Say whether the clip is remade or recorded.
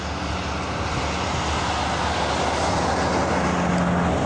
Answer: recorded